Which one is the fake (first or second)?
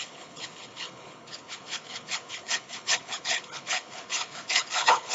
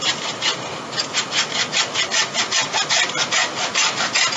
first